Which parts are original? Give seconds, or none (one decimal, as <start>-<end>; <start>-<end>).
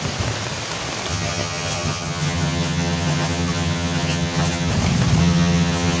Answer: 0.0-1.1; 4.7-5.2